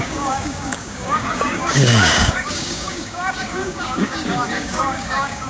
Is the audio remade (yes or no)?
yes